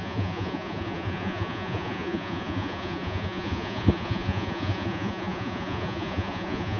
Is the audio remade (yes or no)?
yes